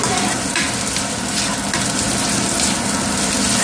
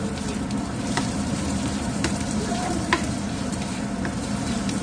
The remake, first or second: second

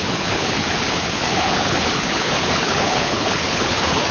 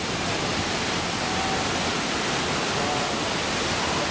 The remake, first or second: first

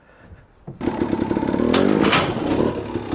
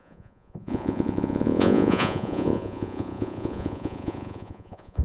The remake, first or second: second